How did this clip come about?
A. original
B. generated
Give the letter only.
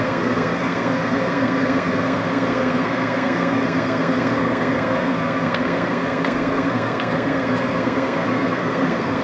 B